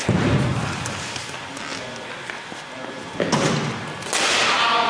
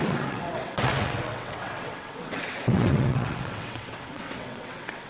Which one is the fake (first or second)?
second